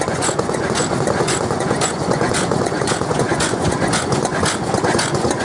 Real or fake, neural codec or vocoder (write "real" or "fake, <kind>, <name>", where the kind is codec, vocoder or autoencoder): fake, vocoder, Vocos